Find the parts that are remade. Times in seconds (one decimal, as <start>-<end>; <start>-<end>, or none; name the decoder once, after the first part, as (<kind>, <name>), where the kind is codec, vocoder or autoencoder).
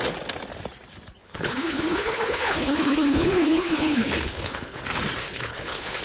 1.2-4.8 (codec, HILCodec); 5.2-6.0